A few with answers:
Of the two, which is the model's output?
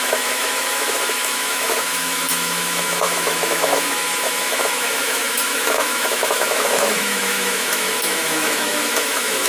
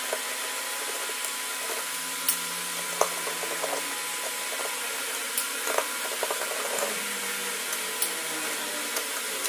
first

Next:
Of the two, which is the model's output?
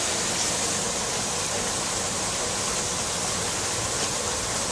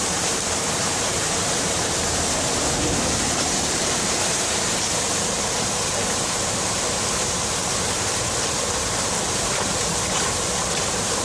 second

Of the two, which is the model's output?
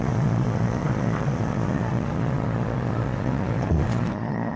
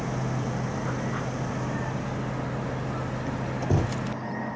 first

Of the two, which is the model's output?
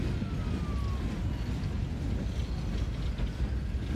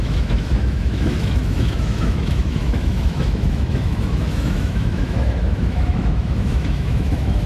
second